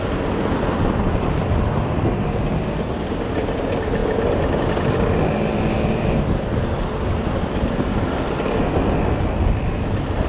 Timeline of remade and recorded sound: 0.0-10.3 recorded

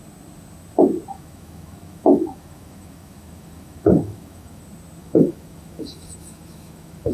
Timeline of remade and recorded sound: 0.0-1.1 recorded; 1.1-4.6 remade; 4.6-5.0 recorded; 5.0-7.1 remade

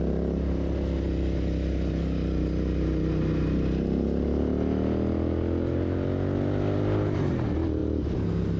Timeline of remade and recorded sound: 0.0-8.6 recorded

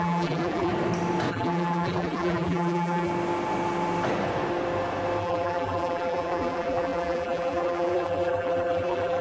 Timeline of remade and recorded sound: 0.0-0.7 remade; 0.7-1.3 recorded; 1.3-3.1 remade; 3.1-5.2 recorded; 5.2-9.2 remade